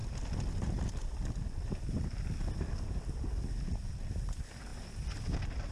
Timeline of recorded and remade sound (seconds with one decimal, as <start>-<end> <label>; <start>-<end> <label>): 0.0-5.7 recorded